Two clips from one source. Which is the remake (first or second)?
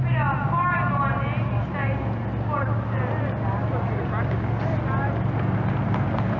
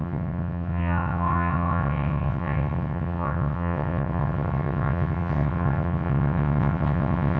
second